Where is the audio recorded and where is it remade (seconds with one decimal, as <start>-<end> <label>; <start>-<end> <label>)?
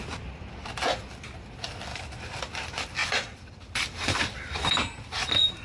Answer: 0.0-1.9 recorded; 1.9-2.4 remade; 2.4-5.6 recorded